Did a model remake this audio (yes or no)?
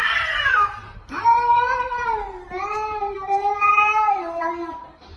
yes